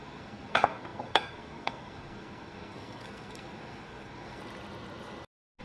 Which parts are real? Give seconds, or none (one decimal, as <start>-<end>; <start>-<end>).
4.4-5.6